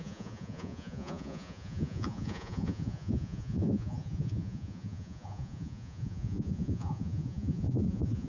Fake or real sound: fake